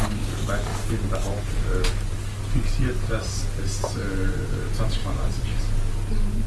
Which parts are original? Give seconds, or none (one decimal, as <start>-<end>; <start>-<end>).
0.0-5.0; 5.6-6.5